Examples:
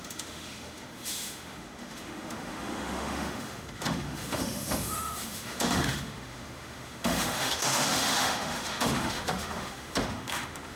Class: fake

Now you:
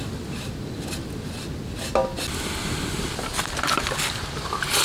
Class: real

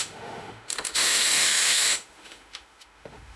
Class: fake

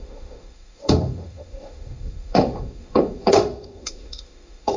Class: fake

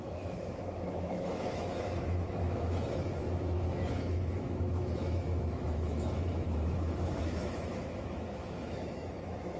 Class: fake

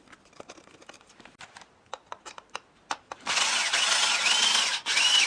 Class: real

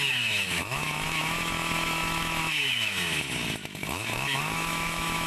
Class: fake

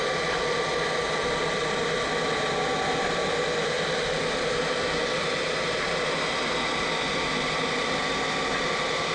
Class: real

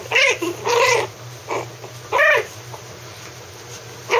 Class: real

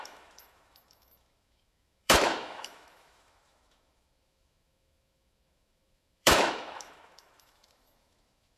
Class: fake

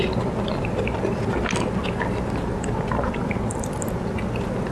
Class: real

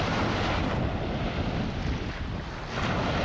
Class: real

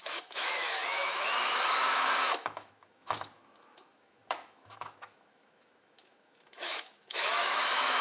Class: fake